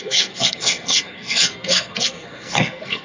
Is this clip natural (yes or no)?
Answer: no